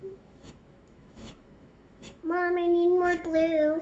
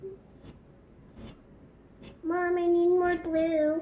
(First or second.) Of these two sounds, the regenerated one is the first